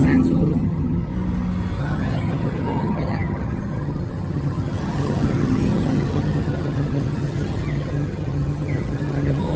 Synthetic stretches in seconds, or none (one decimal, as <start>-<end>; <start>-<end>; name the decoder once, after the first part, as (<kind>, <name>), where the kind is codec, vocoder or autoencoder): 0.0-1.1 (vocoder, HiFi-GAN); 1.8-9.6